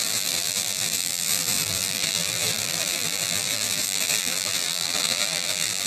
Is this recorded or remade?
remade